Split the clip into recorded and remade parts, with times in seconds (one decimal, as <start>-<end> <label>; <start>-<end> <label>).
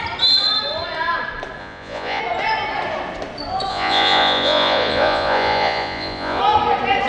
0.0-1.6 recorded; 1.6-2.2 remade; 2.2-3.7 recorded; 3.7-6.4 remade; 6.4-7.1 recorded